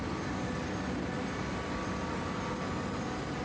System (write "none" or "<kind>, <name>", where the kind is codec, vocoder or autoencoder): none